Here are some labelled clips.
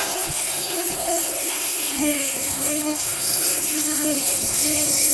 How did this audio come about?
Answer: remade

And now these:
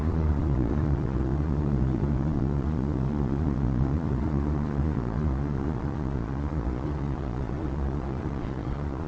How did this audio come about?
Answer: remade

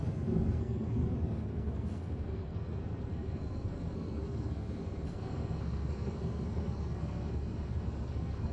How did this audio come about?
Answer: remade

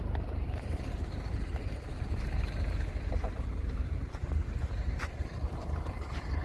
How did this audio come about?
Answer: remade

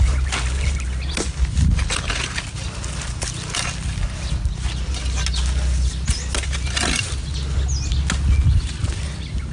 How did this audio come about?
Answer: recorded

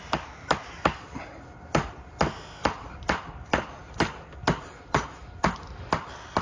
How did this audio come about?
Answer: recorded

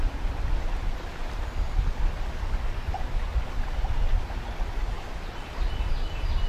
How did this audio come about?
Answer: recorded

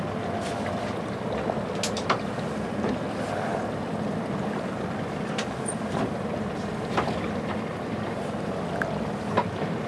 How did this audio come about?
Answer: recorded